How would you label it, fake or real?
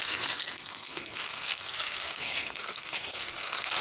fake